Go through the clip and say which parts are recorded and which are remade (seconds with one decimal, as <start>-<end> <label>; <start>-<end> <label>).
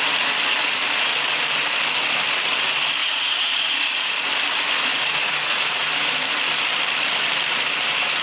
0.0-3.0 recorded; 3.0-4.3 remade; 4.3-4.9 recorded; 4.9-5.9 remade; 5.9-8.2 recorded